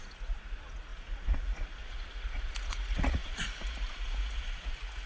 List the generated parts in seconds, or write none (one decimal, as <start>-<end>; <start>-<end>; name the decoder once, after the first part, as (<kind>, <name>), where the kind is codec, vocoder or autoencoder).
0.0-5.1 (vocoder, Vocos)